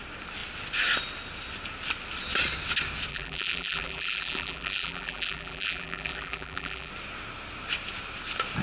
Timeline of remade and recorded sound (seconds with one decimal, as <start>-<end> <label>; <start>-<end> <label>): 0.0-3.1 recorded; 3.1-6.9 remade; 6.9-8.6 recorded